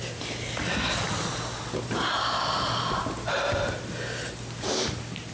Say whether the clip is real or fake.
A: real